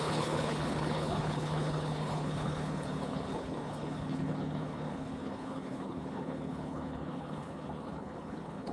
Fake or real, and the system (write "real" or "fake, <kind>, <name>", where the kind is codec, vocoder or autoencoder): fake, codec, HILCodec